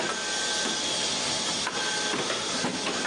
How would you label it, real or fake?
real